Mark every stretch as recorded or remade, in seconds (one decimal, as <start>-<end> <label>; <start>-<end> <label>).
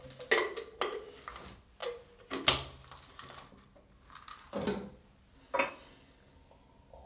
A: 0.0-7.1 recorded